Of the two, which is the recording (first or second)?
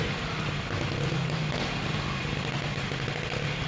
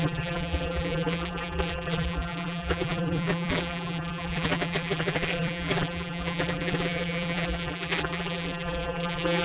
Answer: first